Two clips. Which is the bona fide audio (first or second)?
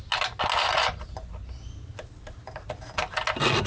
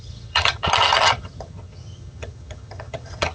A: first